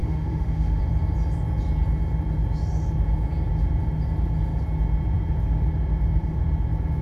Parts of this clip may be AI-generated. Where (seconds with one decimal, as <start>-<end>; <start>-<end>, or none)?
0.0-0.8